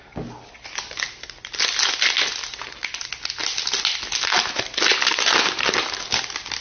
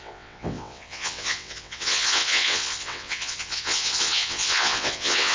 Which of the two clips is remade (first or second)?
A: second